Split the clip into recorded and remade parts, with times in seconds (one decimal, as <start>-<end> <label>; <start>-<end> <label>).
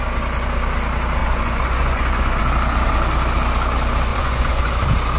0.0-1.2 recorded; 1.2-2.5 remade; 2.5-4.1 recorded; 4.1-4.7 remade; 4.7-5.2 recorded